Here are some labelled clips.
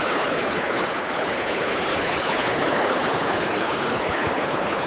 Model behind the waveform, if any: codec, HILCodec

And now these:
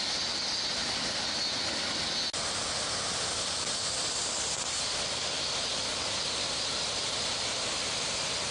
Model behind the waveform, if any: none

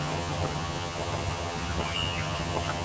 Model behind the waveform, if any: vocoder, HiFi-GAN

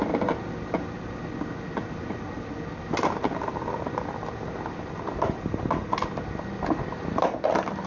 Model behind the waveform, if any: none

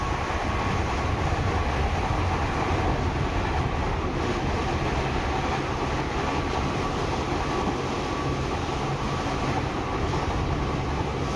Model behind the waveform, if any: none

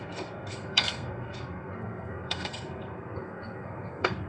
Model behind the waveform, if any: codec, SNAC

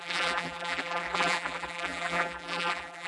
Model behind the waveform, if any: vocoder, BigVGAN v2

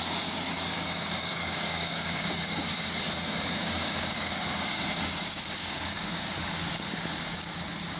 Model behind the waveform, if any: codec, DAC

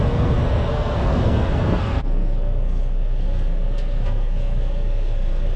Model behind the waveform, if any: codec, SNAC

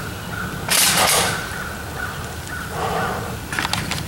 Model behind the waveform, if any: none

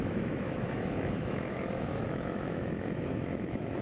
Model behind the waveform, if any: autoencoder, DAC-VAE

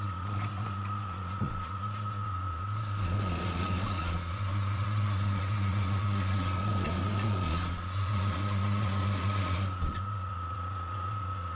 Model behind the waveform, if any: vocoder, Vocos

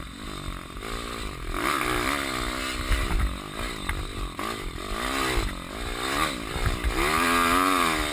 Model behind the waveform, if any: none